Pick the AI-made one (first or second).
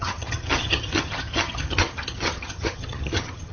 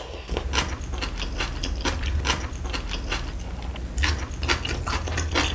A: first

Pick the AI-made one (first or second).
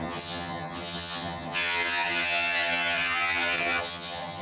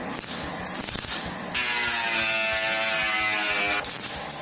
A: first